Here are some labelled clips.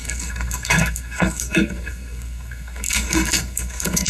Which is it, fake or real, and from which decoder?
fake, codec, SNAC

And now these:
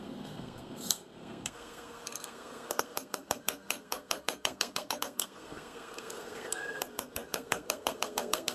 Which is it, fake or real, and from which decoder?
fake, codec, SNAC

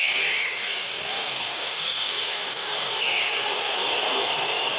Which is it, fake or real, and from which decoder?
fake, codec, DAC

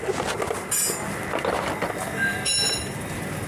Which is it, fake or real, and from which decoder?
real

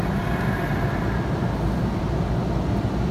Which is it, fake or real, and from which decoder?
real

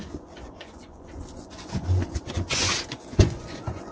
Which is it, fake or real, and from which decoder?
fake, vocoder, Vocos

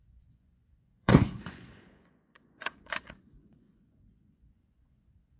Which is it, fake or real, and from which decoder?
fake, vocoder, Vocos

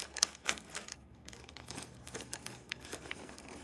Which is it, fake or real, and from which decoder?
fake, codec, SNAC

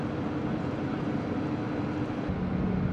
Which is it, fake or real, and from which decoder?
real